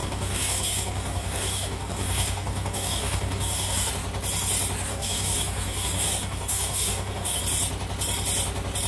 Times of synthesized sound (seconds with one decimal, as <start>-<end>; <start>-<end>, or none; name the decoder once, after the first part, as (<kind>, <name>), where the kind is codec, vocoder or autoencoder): 0.0-3.9 (codec, DAC); 4.9-7.4